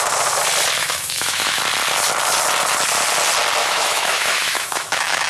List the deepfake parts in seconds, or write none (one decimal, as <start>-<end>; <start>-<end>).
0.8-1.6; 3.6-5.3